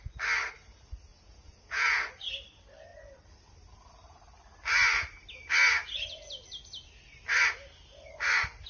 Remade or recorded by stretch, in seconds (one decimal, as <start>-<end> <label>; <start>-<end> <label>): 0.0-1.1 recorded; 1.1-2.2 remade; 2.2-8.7 recorded

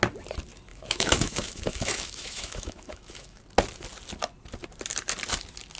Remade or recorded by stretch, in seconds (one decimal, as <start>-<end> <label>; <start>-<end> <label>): 0.0-0.7 recorded; 0.7-3.4 remade; 3.4-5.8 recorded

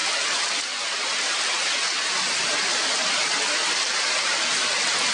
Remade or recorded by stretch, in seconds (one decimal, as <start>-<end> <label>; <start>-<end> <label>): 0.0-5.1 recorded

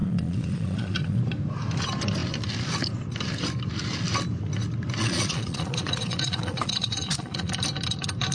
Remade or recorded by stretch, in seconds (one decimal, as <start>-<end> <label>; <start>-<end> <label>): 0.0-1.2 remade; 1.2-5.0 recorded; 5.0-7.5 remade; 7.5-8.3 recorded

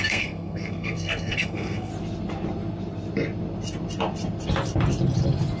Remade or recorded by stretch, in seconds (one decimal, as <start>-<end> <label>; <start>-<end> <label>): 0.0-1.9 remade; 1.9-5.6 recorded